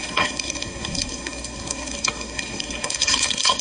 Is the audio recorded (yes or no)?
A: no